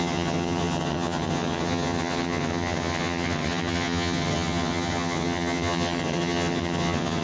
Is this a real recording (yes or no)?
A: no